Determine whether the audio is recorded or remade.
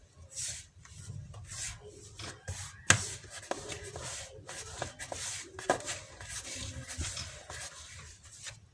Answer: recorded